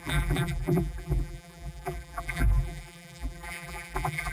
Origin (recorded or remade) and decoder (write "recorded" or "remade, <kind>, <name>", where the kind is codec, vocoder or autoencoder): remade, vocoder, BigVGAN v2